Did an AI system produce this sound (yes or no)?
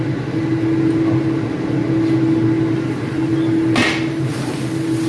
no